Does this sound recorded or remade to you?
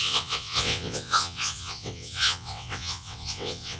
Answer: remade